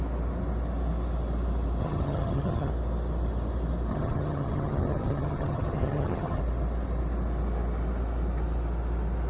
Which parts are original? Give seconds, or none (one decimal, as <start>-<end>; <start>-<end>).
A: 0.0-1.8; 2.7-3.9; 6.4-9.3